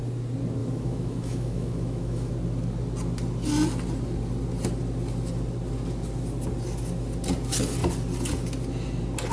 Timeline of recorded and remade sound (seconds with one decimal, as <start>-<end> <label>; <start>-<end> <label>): 0.0-0.6 recorded; 0.6-2.3 remade; 2.3-9.3 recorded